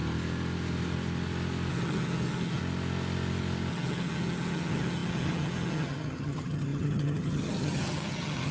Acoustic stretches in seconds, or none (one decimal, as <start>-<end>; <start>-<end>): 0.0-1.7; 2.6-3.7